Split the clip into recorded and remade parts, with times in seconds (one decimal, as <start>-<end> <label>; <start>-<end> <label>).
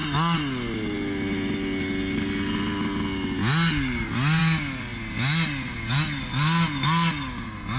0.0-7.8 recorded